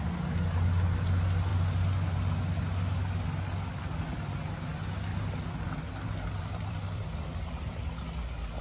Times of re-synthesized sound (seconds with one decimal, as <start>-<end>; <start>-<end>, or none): 5.1-7.9